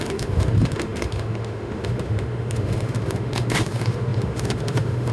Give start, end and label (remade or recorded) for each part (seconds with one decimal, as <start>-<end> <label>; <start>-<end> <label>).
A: 0.0-5.1 remade